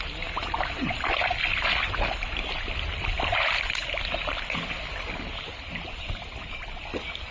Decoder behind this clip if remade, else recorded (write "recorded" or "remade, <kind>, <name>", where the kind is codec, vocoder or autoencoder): recorded